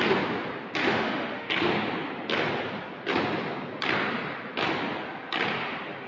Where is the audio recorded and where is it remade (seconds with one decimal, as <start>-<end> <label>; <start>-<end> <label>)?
0.0-0.8 recorded; 0.8-1.5 remade; 1.5-6.1 recorded